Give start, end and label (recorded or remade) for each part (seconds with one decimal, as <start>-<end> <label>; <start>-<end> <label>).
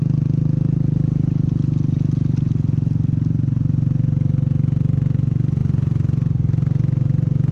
0.0-7.5 recorded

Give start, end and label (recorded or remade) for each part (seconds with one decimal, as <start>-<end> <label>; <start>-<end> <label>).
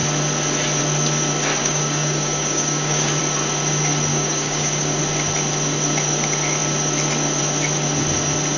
0.0-1.6 recorded; 1.6-3.2 remade; 3.2-4.1 recorded; 4.1-5.0 remade; 5.0-8.6 recorded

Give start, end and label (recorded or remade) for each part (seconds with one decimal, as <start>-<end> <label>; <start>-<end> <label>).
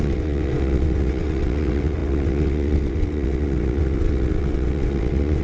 0.0-5.4 remade